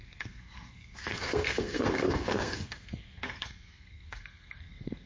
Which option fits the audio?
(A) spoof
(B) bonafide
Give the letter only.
A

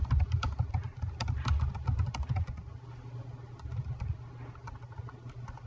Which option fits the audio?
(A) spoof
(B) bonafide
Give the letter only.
B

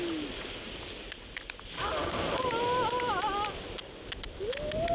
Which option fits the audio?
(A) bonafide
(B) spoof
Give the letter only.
A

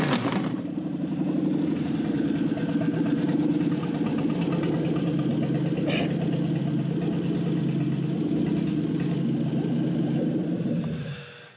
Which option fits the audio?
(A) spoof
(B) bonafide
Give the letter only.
B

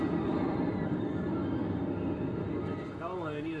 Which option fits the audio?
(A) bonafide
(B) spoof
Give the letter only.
A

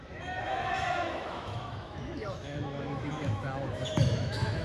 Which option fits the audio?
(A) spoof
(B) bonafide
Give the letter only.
A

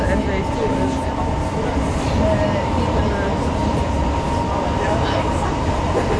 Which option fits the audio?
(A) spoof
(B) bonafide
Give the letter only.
B